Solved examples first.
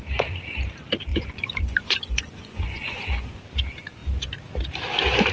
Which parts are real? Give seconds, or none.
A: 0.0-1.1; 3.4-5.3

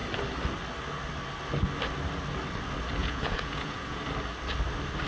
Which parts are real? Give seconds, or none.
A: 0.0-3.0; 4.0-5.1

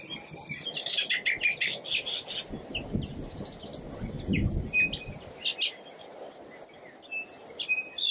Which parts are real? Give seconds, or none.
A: 0.0-8.1